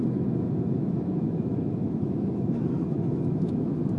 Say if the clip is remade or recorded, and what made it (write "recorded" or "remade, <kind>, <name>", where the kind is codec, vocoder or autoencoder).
remade, autoencoder, DAC-VAE